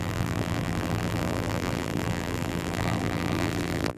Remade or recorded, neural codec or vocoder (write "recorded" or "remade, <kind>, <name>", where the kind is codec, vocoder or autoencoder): remade, vocoder, BigVGAN v2